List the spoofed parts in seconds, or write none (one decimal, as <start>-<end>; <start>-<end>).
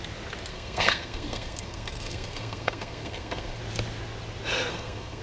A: 0.5-3.6; 4.7-5.2